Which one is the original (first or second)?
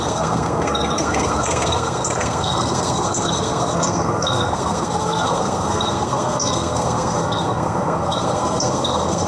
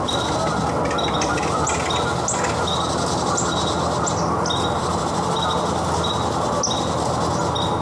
second